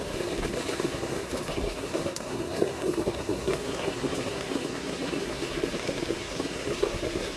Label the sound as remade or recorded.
remade